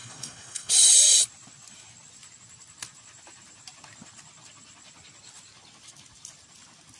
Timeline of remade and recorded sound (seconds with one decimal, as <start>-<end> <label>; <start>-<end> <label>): 0.0-0.7 remade; 0.7-7.0 recorded